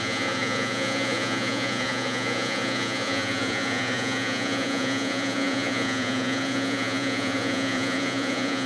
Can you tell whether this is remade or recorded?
remade